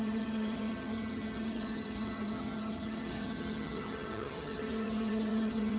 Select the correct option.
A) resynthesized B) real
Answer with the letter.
A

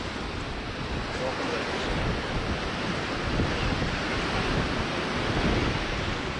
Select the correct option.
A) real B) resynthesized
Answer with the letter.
A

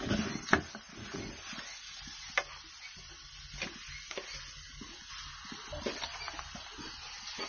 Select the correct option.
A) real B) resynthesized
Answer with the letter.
A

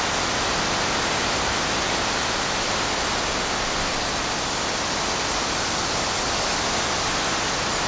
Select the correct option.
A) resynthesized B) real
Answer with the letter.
B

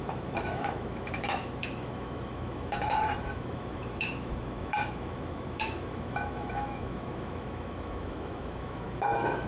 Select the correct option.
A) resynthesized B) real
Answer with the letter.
A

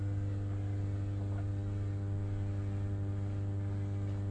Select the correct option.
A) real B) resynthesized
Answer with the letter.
A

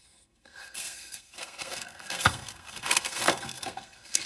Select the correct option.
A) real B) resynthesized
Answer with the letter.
B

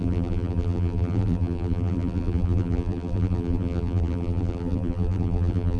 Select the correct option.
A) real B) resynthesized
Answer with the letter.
B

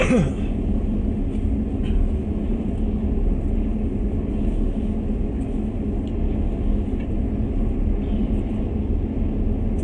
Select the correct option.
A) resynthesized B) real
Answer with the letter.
B